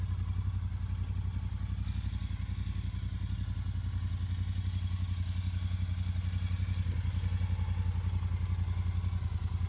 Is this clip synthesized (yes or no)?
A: no